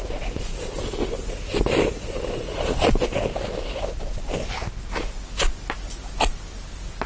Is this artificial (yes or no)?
no